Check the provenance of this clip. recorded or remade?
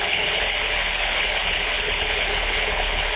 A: remade